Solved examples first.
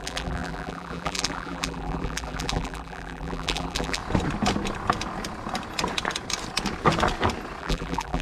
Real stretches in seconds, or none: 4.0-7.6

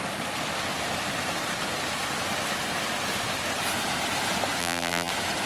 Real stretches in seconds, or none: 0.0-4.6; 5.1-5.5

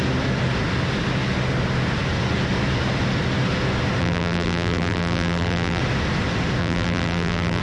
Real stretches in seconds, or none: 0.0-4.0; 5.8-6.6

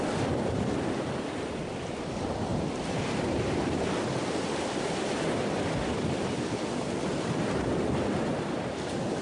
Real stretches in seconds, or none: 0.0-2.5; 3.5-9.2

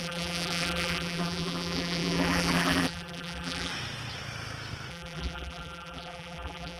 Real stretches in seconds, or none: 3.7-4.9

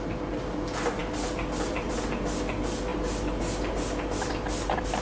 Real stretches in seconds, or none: none